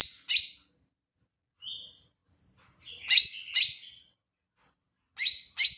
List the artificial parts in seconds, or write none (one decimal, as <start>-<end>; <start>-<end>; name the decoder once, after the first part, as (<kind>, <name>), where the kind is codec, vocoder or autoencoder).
none